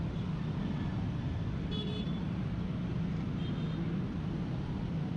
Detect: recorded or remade recorded